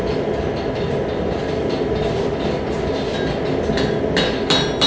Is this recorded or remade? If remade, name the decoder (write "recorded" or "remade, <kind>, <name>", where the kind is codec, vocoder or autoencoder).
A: recorded